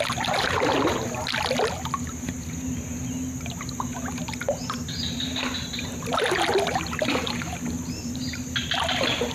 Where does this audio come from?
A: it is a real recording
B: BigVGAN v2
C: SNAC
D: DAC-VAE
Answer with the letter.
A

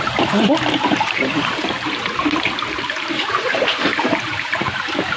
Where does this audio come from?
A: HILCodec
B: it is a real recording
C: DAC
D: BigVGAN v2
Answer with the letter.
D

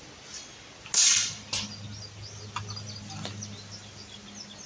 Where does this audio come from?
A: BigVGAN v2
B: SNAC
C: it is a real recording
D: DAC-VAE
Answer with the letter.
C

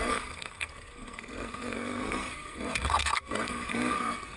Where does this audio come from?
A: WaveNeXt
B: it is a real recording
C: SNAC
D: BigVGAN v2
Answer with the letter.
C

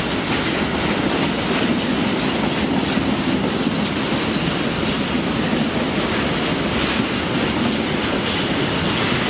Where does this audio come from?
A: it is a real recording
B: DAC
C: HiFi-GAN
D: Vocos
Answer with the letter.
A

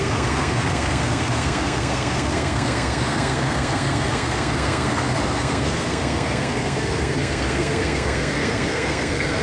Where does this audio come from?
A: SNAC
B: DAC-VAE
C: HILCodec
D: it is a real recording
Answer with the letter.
A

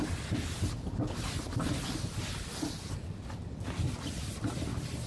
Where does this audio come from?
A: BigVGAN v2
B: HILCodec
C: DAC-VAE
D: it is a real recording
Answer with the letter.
D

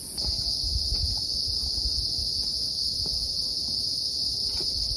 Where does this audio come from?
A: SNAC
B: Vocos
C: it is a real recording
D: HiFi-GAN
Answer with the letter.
C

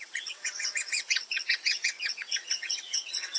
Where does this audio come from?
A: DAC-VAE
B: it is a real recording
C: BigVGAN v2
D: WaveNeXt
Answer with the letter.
D